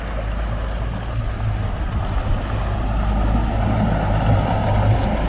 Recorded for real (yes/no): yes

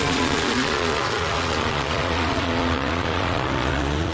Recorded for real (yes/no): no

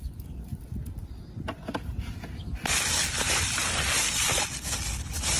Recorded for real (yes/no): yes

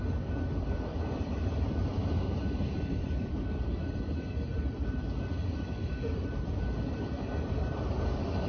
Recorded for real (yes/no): no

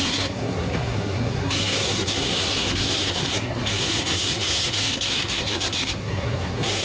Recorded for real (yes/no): no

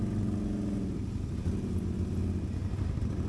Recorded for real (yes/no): yes